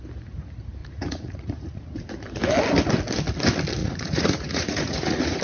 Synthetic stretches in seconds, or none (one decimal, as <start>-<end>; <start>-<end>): 0.8-2.1; 3.8-5.4